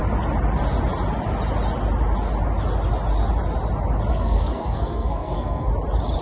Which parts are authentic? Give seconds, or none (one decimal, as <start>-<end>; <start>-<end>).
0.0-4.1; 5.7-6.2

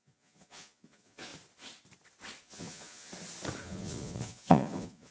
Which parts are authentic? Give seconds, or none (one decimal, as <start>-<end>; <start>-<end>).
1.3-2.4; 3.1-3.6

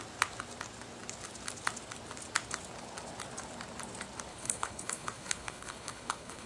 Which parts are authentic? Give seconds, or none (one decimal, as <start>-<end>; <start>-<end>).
0.0-4.3

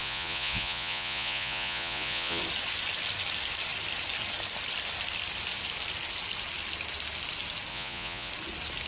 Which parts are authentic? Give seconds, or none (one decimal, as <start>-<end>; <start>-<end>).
2.4-7.7; 8.3-8.9

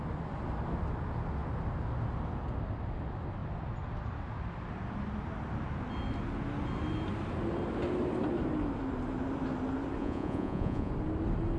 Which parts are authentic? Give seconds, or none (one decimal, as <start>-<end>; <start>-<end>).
0.0-10.0; 10.9-11.6

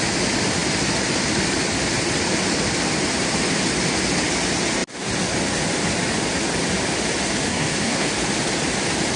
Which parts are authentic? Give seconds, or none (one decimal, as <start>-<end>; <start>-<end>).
0.0-7.5; 8.1-9.2